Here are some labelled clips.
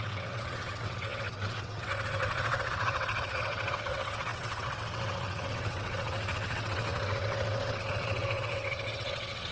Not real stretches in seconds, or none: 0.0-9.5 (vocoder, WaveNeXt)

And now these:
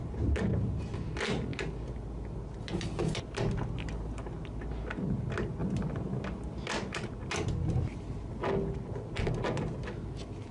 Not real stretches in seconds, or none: none

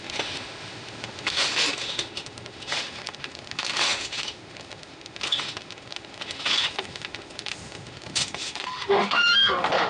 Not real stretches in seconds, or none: 0.0-9.9 (autoencoder, DAC-VAE)

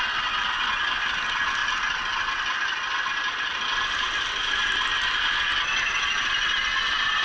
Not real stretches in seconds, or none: none

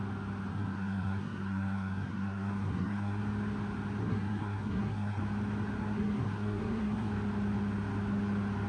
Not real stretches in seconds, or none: 0.5-3.2 (codec, SNAC); 4.0-5.2; 5.8-7.1

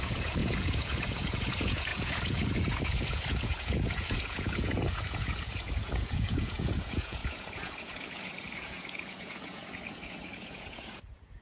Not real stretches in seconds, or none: 0.0-11.4 (vocoder, Vocos)

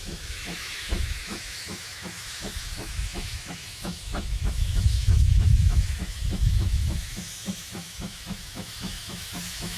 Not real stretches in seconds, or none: 0.0-9.8 (autoencoder, DAC-VAE)

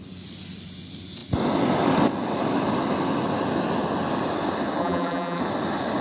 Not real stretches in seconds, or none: 4.8-5.4 (vocoder, BigVGAN v2)